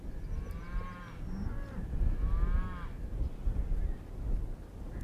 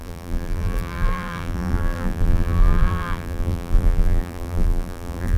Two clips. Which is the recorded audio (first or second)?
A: first